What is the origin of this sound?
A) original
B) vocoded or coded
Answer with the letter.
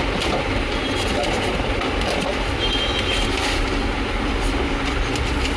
A